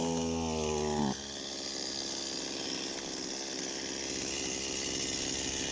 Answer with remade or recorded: recorded